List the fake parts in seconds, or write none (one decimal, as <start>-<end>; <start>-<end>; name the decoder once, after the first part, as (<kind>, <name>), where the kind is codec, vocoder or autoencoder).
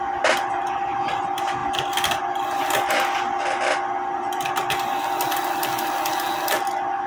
none